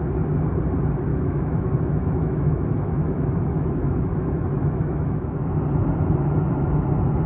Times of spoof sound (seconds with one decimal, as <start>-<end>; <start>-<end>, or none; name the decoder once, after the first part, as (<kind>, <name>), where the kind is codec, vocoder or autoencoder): 1.1-5.3 (autoencoder, DAC-VAE)